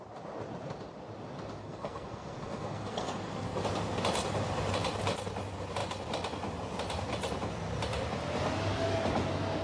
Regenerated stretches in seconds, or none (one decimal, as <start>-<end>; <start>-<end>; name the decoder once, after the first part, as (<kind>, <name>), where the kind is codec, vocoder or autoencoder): 1.6-3.6 (codec, SNAC)

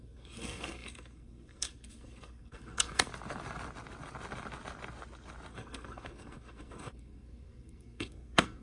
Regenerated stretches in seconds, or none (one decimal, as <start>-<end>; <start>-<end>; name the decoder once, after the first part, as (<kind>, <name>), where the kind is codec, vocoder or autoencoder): 0.0-3.1 (codec, SNAC); 5.5-8.6

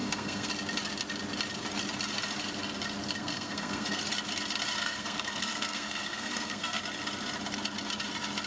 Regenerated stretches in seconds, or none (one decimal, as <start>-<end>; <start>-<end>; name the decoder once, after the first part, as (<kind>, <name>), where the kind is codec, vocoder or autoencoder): 0.0-0.5 (codec, SNAC); 3.2-4.0; 4.8-6.8

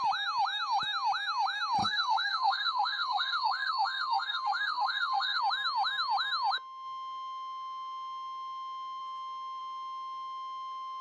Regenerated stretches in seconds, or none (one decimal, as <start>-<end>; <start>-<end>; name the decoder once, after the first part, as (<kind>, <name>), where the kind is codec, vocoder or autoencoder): 1.8-5.4 (codec, SNAC)

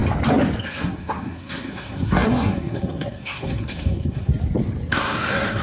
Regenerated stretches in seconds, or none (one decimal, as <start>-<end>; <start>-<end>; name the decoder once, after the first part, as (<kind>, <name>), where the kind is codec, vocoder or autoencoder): 0.6-4.3 (codec, SNAC); 4.9-5.6

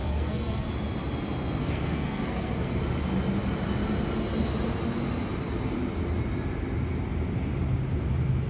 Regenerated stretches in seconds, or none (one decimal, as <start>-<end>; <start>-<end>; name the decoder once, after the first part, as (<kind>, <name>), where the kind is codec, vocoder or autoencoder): 0.0-0.7 (codec, SNAC); 1.6-2.8

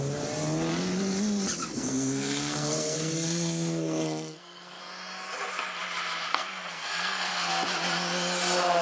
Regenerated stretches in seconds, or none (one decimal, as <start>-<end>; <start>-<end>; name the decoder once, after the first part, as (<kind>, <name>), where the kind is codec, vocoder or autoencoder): 1.6-4.8 (codec, SNAC); 6.3-7.5